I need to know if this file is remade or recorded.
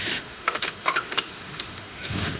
remade